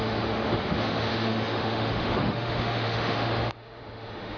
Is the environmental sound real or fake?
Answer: fake